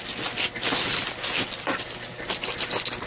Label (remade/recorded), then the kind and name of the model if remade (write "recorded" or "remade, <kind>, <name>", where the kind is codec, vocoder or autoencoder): recorded